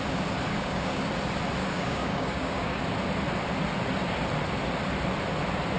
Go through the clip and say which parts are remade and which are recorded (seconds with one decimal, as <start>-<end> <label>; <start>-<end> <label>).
0.0-0.5 recorded; 0.5-1.1 remade; 1.1-1.6 recorded; 1.6-2.8 remade; 2.8-5.8 recorded